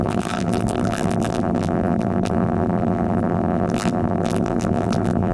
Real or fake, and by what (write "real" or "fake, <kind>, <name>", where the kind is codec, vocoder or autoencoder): fake, vocoder, BigVGAN v2